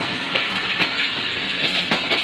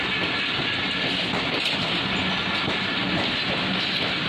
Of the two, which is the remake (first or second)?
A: first